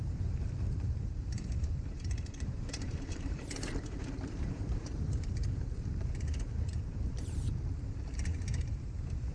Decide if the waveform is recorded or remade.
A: remade